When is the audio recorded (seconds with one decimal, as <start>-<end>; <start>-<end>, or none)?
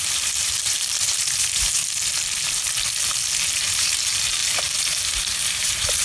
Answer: 1.8-3.6